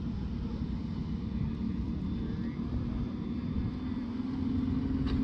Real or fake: real